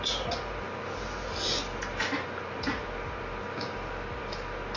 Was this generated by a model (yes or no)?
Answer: no